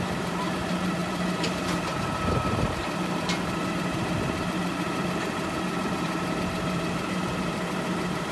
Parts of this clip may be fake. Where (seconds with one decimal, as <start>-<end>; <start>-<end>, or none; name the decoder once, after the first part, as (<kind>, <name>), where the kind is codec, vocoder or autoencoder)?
0.0-8.3 (vocoder, BigVGAN v2)